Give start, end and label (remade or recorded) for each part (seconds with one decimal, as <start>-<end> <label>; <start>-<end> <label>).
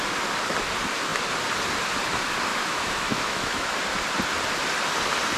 0.0-2.5 recorded; 2.5-3.7 remade; 3.7-5.4 recorded